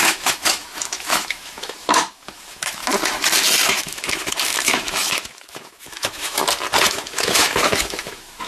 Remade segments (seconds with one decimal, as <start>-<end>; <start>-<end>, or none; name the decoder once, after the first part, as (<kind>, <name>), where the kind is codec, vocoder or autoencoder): 0.0-2.8 (autoencoder, DAC-VAE); 3.7-6.4; 6.9-8.5